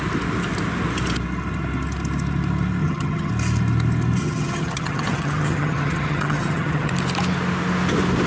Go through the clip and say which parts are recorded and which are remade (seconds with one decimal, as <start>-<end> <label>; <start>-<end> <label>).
0.0-2.8 recorded; 2.8-3.3 remade; 3.3-4.2 recorded; 4.2-6.9 remade; 6.9-8.3 recorded